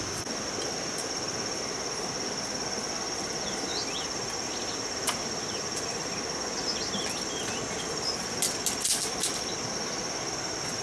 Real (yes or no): yes